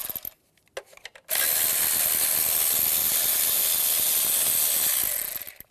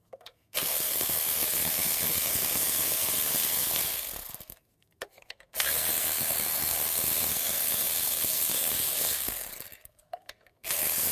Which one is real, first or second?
first